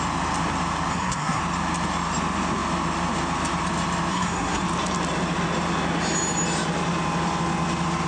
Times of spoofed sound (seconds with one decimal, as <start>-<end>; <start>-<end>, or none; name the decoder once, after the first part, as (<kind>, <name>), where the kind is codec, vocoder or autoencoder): 0.9-1.4 (codec, SNAC); 4.1-4.6